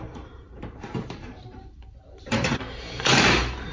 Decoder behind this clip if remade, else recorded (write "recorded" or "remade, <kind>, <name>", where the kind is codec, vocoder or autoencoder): remade, vocoder, BigVGAN v2